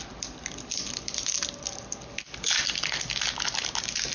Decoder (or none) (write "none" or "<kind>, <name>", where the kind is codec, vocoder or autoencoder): none